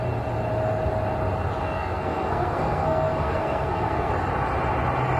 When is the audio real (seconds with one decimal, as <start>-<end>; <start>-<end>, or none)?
0.0-1.6; 4.1-5.2

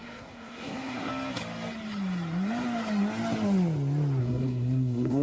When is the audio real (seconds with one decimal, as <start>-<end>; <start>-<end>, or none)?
1.1-4.2

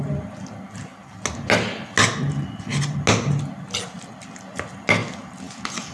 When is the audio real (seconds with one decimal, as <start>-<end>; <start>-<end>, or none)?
0.0-5.9

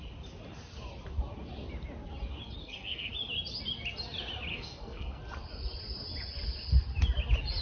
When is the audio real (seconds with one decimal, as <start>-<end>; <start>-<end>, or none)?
0.0-2.6; 3.1-4.5; 5.2-7.6

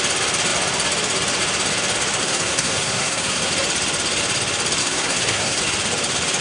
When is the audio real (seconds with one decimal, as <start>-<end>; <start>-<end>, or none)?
0.0-2.2; 3.5-4.8; 5.6-6.4

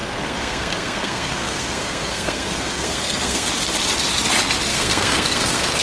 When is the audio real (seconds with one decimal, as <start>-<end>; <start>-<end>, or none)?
3.5-4.7

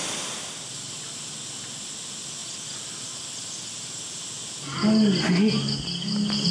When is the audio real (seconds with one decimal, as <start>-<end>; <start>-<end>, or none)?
0.0-6.5